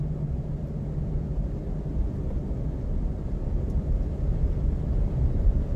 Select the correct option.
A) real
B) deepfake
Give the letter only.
A